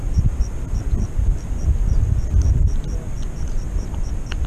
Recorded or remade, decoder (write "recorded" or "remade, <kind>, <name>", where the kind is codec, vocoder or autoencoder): recorded